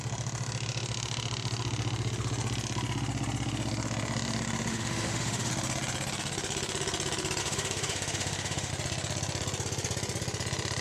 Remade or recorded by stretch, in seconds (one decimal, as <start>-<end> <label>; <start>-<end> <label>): 0.0-4.7 recorded; 4.7-5.5 remade; 5.5-7.4 recorded; 7.4-8.7 remade; 8.7-10.8 recorded